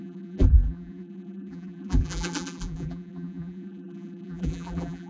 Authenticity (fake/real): fake